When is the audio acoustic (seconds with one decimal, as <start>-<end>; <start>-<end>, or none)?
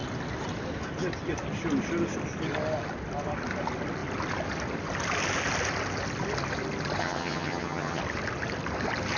0.0-7.0; 8.0-9.2